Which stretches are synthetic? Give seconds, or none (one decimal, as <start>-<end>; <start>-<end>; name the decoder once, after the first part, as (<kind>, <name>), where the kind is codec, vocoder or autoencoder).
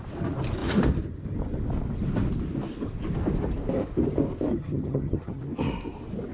4.5-5.4 (vocoder, HiFi-GAN)